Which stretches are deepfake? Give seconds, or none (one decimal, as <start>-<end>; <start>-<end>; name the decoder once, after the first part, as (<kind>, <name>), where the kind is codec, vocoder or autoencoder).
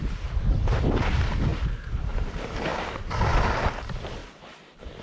0.0-4.2 (vocoder, BigVGAN v2)